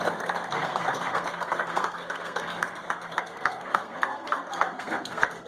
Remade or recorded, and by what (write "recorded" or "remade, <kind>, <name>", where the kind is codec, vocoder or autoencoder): remade, codec, SNAC